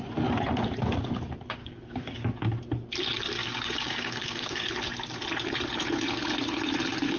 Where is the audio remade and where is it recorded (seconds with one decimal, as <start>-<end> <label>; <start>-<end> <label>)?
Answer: 0.0-1.6 recorded; 1.6-2.5 remade; 2.5-3.4 recorded; 3.4-4.7 remade; 4.7-7.2 recorded